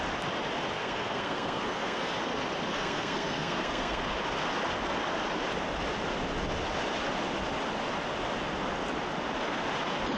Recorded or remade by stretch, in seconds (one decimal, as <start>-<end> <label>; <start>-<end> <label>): 0.0-0.8 recorded; 0.8-2.1 remade; 2.1-2.7 recorded; 2.7-4.0 remade; 4.0-10.2 recorded